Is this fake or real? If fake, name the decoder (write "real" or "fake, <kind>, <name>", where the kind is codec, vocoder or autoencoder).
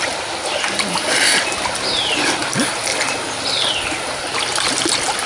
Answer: real